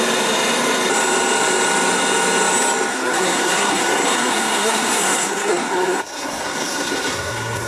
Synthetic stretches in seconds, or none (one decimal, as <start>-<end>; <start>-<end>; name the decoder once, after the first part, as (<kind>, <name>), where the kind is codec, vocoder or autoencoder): 2.9-7.7 (codec, SNAC)